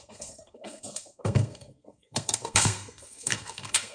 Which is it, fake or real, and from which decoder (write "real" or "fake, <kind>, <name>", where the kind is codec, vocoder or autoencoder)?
fake, codec, SNAC